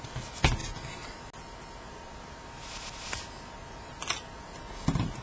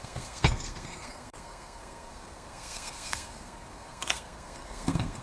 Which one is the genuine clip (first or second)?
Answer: first